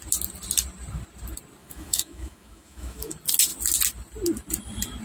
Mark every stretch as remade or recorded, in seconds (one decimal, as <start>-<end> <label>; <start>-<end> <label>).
0.0-1.6 recorded; 1.6-3.1 remade; 3.1-5.0 recorded